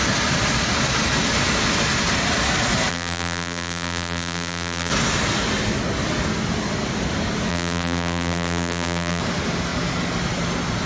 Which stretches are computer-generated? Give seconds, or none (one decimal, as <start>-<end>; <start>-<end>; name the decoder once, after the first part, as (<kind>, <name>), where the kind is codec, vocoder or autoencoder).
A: 2.9-4.9 (vocoder, BigVGAN v2); 7.5-9.2